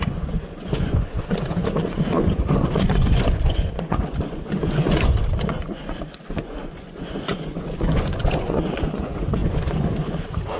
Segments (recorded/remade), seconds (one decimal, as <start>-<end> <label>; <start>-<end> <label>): 0.0-10.6 remade